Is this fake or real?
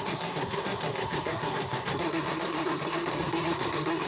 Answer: fake